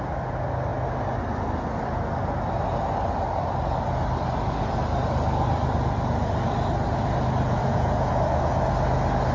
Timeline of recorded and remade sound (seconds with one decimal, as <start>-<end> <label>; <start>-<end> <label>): 0.0-7.5 recorded; 7.5-8.1 remade; 8.1-9.3 recorded